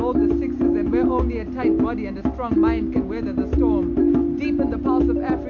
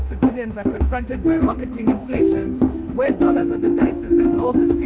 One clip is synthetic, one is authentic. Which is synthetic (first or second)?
second